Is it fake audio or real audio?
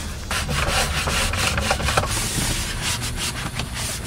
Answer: real